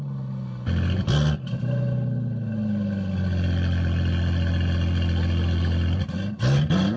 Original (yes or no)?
yes